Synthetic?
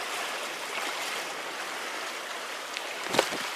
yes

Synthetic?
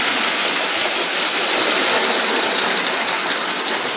no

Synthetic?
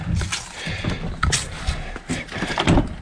no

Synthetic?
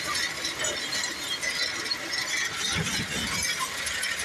no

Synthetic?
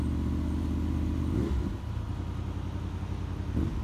no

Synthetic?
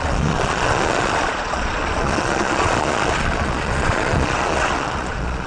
yes